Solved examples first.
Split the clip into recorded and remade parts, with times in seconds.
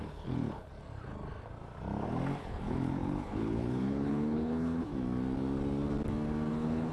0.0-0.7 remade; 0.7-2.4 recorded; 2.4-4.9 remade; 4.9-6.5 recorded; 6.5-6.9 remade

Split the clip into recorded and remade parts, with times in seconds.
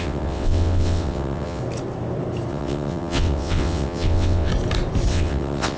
0.0-1.6 remade; 1.6-2.5 recorded; 2.5-4.5 remade; 4.5-5.1 recorded; 5.1-5.8 remade